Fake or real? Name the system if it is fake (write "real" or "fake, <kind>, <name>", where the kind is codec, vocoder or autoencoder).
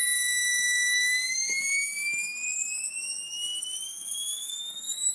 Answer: fake, codec, DAC